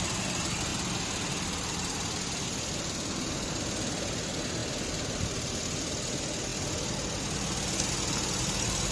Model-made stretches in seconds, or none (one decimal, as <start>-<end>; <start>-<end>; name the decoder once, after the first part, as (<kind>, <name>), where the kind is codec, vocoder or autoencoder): none